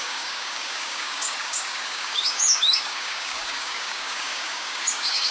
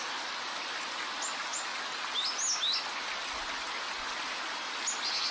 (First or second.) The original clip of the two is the second